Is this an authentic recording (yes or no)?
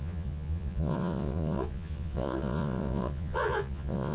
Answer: no